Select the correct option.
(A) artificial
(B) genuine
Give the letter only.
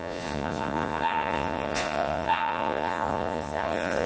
A